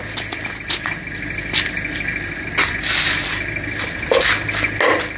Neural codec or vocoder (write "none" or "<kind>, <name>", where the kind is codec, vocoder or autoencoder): none